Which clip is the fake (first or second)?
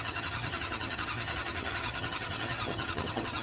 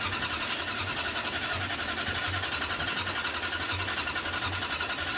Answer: first